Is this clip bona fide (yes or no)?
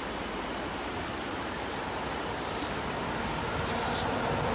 yes